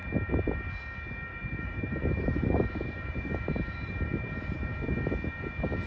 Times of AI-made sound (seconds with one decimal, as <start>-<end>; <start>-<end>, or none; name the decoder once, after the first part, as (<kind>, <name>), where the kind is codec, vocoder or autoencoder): 1.3-4.6 (vocoder, BigVGAN v2)